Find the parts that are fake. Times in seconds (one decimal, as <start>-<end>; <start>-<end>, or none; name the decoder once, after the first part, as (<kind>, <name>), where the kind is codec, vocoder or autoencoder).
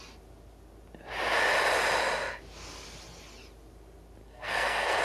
4.2-5.0 (codec, SNAC)